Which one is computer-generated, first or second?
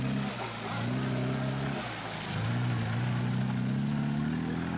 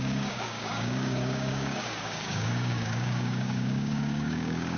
second